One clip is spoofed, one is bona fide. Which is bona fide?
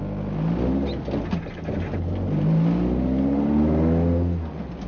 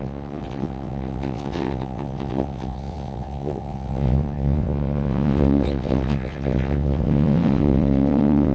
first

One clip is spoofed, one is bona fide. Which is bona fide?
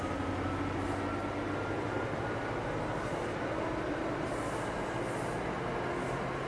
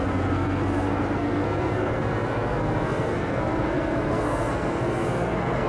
first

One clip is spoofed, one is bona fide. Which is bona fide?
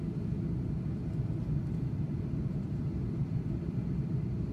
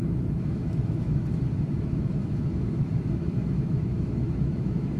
first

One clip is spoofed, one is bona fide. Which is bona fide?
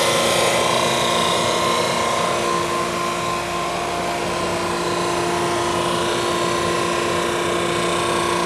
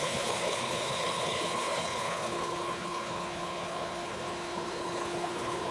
first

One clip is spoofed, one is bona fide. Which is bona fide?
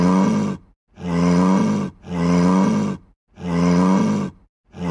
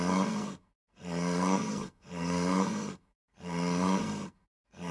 first